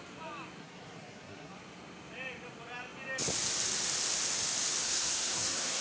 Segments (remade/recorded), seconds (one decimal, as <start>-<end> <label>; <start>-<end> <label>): 0.0-0.6 recorded; 0.6-1.5 remade; 1.5-4.8 recorded; 4.8-5.8 remade